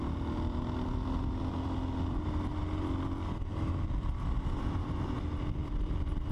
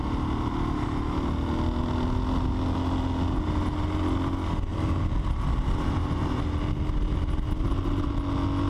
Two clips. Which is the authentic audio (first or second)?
second